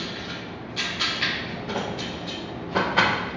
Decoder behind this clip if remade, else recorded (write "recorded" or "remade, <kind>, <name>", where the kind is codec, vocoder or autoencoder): recorded